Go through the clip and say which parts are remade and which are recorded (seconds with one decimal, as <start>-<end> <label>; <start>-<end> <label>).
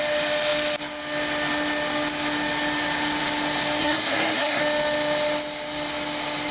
0.0-3.8 recorded; 3.8-4.6 remade; 4.6-6.5 recorded